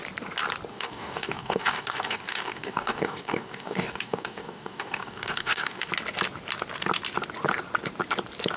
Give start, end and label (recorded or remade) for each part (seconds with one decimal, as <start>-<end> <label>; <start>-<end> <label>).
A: 0.0-0.7 recorded; 0.7-5.9 remade; 5.9-8.6 recorded